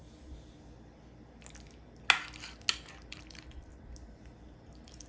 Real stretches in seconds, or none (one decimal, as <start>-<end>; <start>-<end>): 0.0-3.1; 3.7-4.6